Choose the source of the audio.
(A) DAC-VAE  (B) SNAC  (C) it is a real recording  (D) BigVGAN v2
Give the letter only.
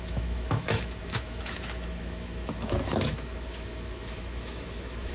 A